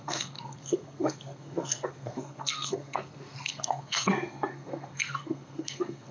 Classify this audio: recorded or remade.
remade